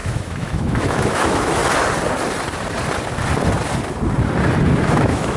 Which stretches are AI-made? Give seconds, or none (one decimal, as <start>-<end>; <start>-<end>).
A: 0.0-1.6; 4.8-5.4

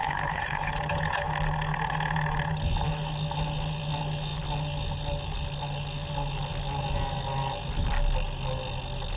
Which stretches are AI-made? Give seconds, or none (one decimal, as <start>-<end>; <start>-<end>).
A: 0.0-0.7

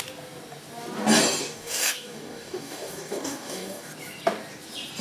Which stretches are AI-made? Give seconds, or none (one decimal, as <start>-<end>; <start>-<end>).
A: 1.4-3.9

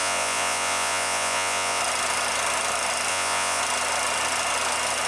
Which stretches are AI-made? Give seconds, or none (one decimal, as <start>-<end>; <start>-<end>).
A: 0.0-1.8; 3.1-3.6

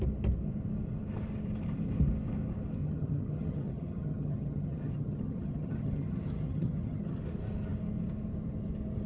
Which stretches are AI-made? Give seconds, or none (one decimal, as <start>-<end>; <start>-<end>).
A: 2.8-7.2

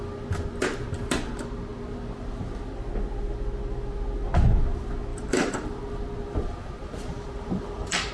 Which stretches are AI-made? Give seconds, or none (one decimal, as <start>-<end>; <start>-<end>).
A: 5.1-5.8; 6.8-8.1